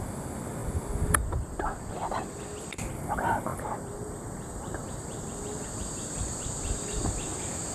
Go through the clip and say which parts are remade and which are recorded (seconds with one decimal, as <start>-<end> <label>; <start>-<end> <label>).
0.0-7.7 recorded